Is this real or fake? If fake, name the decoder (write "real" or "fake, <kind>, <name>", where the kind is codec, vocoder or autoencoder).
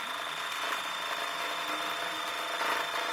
real